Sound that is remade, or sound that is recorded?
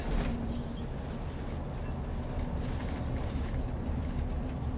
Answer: recorded